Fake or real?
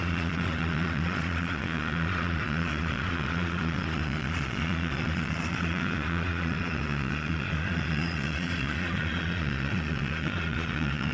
fake